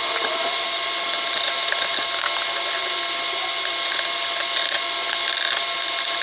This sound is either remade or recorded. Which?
recorded